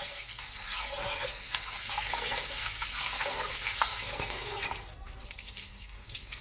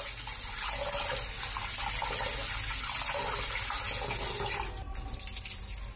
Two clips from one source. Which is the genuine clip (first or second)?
second